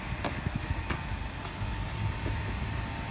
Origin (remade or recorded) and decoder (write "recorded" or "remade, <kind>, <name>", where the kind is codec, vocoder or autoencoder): recorded